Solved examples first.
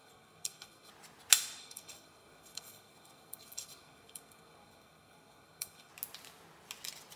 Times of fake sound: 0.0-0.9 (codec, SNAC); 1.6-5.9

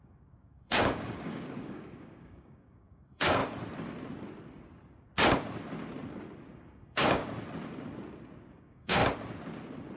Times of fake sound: 0.0-3.4 (codec, DAC); 6.6-7.2; 8.5-9.0

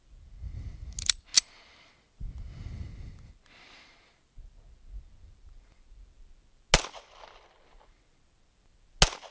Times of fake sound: none

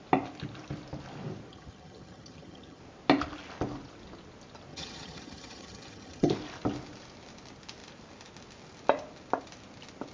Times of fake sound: 1.5-2.8 (vocoder, HiFi-GAN); 4.7-6.3

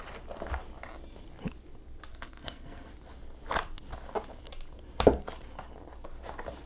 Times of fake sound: 2.1-2.9 (codec, SNAC)